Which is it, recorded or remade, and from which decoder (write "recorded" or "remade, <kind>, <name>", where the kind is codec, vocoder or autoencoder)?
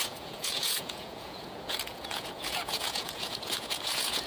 remade, vocoder, Vocos